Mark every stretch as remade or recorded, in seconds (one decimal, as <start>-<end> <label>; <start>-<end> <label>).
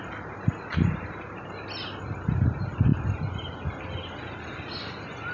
0.0-5.3 recorded